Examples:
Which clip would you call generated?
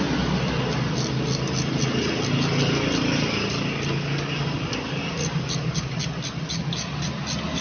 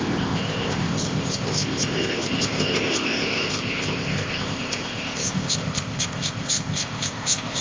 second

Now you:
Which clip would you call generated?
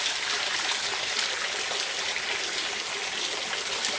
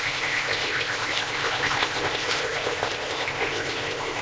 second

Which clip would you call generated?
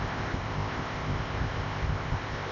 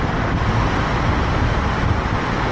first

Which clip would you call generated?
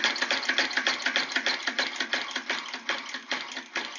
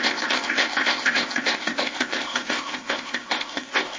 second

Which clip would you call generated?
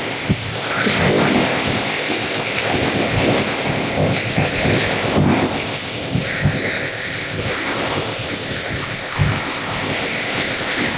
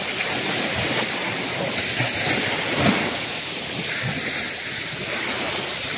first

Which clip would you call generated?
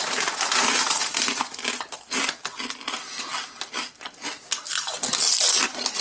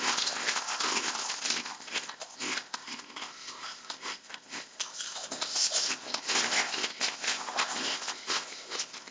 second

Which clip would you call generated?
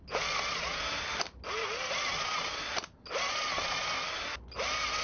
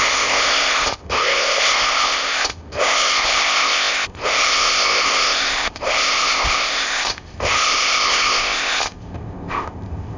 second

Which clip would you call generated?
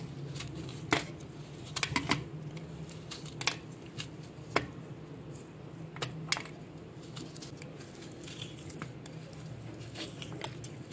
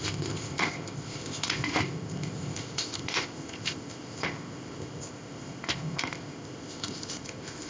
second